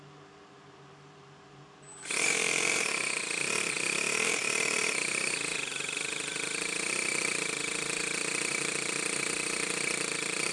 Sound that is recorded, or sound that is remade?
remade